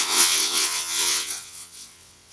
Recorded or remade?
remade